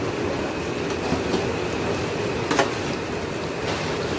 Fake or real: real